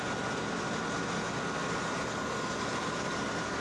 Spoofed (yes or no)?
no